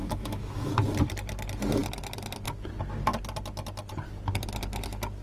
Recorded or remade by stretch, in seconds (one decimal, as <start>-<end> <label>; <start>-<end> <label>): 0.0-0.7 remade; 0.7-5.2 recorded